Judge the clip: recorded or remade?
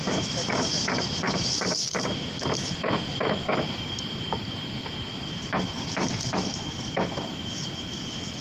remade